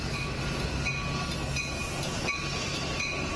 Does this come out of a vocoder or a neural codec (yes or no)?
no